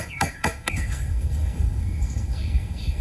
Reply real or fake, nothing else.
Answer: fake